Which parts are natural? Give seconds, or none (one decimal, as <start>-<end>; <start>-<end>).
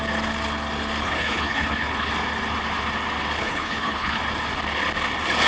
0.0-1.0; 2.1-3.4; 4.2-5.5